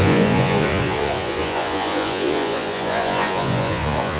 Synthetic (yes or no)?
yes